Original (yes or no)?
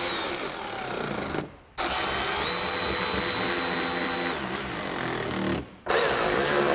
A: yes